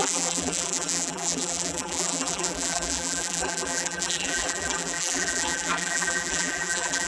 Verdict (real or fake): fake